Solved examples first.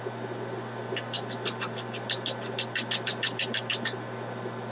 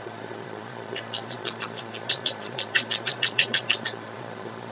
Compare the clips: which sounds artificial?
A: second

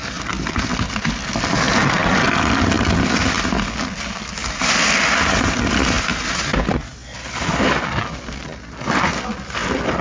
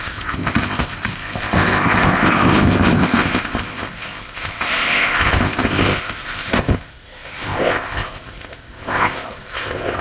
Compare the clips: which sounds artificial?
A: second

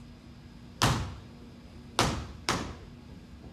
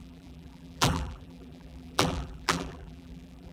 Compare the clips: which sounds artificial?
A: second